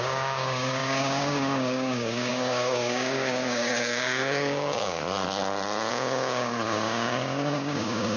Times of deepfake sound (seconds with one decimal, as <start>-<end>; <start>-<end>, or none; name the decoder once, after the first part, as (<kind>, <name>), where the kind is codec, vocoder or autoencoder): 0.0-5.0 (codec, DAC); 5.9-8.2